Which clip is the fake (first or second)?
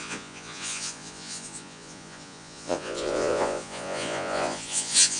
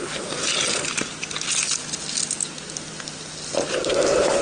first